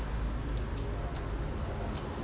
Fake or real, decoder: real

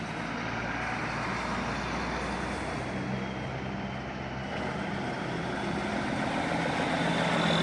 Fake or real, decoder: real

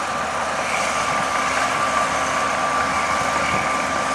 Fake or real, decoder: real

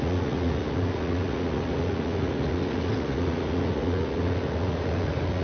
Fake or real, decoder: fake, vocoder, Vocos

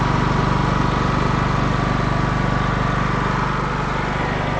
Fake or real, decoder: real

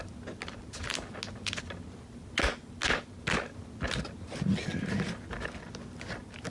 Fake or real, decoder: real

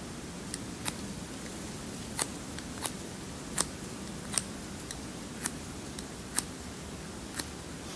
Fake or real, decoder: real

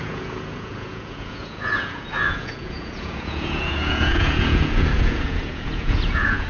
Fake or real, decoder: fake, vocoder, Vocos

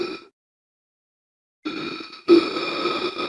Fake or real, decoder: real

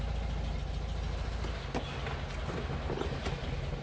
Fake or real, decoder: real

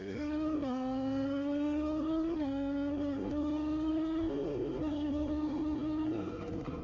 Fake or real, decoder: fake, codec, SNAC